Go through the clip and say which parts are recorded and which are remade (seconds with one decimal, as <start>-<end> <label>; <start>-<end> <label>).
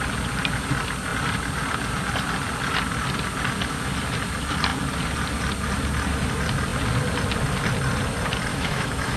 0.0-8.5 recorded; 8.5-9.2 remade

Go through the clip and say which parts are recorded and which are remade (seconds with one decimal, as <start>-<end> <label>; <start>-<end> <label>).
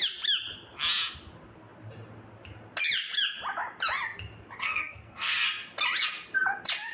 0.0-4.6 recorded; 4.6-5.3 remade; 5.3-6.9 recorded